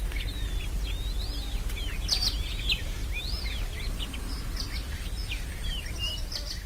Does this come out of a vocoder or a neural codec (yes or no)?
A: no